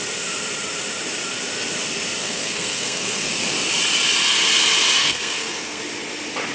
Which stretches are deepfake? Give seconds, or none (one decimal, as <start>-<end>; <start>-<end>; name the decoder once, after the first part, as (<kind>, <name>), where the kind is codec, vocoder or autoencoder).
2.2-3.3 (codec, SNAC); 5.0-5.8